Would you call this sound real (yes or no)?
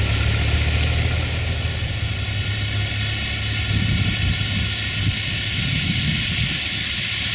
yes